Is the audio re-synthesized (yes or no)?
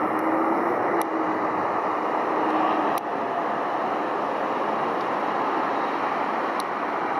no